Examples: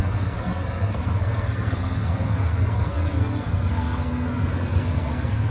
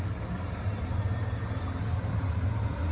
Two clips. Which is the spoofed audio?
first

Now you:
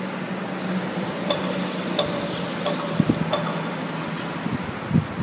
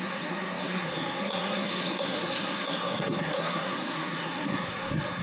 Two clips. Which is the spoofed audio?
second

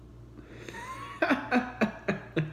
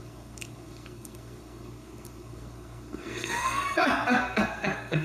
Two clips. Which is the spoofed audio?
second